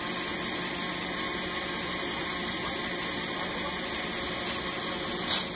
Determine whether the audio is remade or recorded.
recorded